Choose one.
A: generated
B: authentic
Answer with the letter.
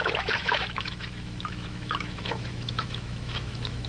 A